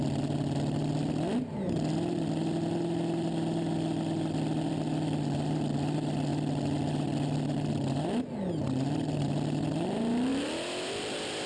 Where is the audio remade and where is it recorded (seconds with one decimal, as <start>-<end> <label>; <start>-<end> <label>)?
0.0-11.5 recorded